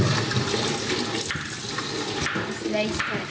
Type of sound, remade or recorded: recorded